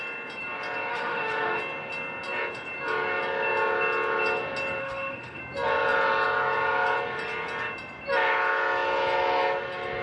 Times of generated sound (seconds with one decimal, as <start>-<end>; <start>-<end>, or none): 0.9-1.6; 4.8-5.4

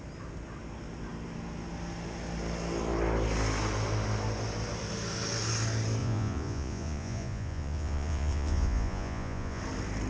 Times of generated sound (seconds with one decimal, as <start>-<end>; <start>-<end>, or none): 6.0-9.6

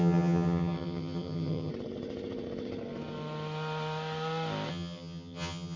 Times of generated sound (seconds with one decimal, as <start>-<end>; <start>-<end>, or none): 0.0-1.7; 4.7-5.8

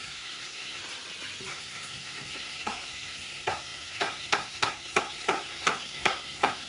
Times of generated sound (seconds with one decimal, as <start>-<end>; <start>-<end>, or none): 0.0-0.8; 1.5-6.7

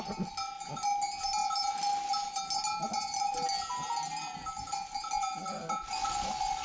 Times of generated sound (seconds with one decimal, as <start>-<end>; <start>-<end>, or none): none

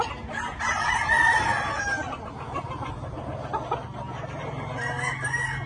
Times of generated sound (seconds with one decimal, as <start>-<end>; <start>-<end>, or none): none

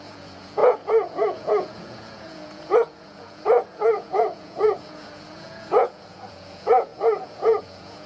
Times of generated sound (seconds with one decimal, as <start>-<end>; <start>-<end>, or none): 0.0-8.1

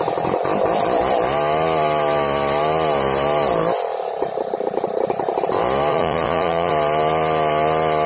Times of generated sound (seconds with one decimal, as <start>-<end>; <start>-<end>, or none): 5.9-6.7